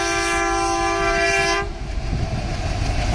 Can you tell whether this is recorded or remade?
recorded